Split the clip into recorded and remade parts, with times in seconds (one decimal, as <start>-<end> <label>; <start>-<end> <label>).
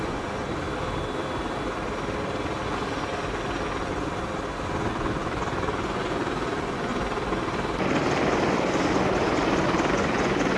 0.0-0.5 remade; 0.5-4.9 recorded; 4.9-6.9 remade; 6.9-9.9 recorded; 9.9-10.6 remade